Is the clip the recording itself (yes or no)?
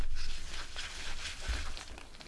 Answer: yes